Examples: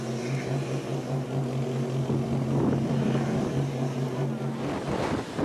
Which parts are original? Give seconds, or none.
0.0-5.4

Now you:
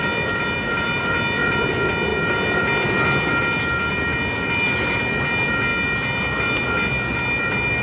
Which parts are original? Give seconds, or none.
0.0-7.8

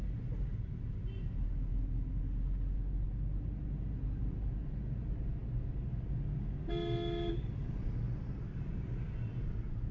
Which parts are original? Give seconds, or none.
0.0-9.9

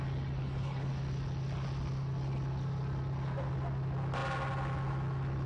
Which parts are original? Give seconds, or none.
0.0-0.4; 0.9-5.5

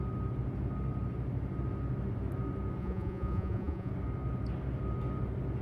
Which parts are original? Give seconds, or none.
0.0-2.8; 3.9-5.6

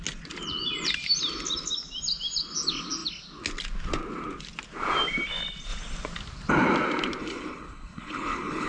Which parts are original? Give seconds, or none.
0.0-7.2

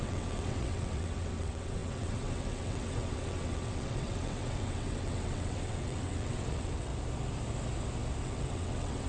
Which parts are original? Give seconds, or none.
6.9-8.2

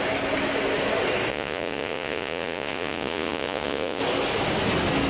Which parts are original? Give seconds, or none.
0.0-1.3; 4.0-5.1